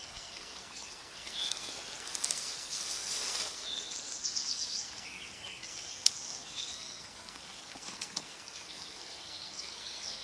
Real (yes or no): no